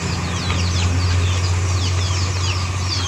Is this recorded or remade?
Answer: recorded